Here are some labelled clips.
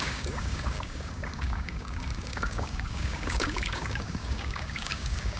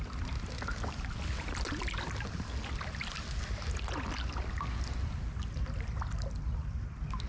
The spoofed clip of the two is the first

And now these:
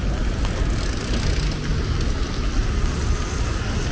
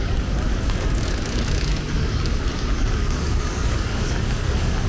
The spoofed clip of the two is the second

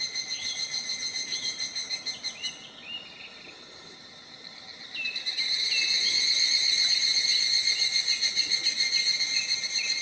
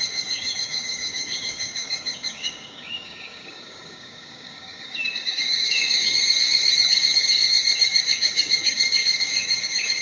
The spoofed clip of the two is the second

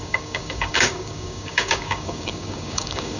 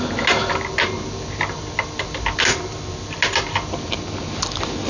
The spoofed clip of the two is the first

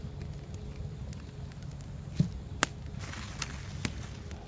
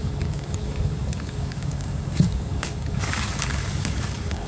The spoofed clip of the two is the second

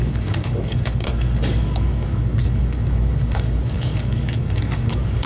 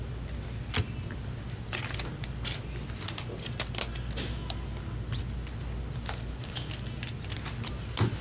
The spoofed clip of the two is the first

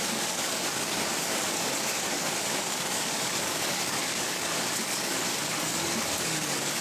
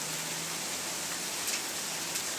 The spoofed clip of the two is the first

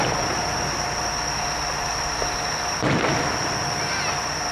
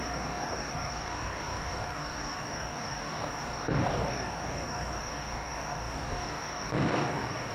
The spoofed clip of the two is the second